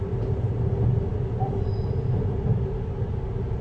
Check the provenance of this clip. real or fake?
real